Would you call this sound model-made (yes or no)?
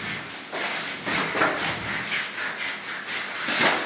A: no